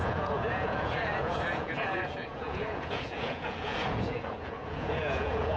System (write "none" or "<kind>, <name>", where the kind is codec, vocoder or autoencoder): vocoder, Vocos